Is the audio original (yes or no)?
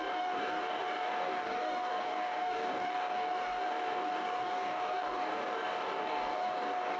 no